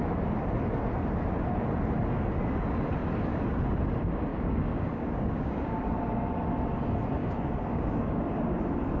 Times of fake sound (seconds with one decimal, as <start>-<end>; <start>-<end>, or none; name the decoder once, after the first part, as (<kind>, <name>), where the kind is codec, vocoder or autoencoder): 4.3-5.9 (codec, DAC); 7.2-8.6